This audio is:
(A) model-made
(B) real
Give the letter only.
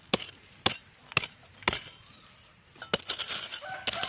B